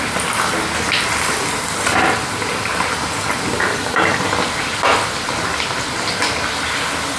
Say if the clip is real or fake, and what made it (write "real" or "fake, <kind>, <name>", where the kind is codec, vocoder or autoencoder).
real